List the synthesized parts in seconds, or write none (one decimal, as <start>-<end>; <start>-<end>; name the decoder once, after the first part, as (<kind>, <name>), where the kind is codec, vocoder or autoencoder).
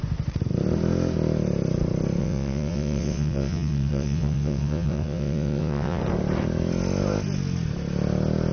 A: 2.2-6.0 (vocoder, WaveNeXt)